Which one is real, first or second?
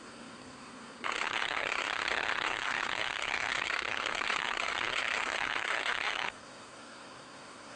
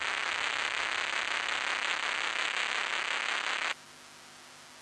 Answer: second